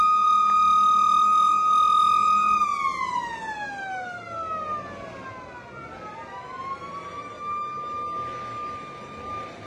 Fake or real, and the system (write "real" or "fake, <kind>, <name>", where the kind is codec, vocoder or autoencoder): real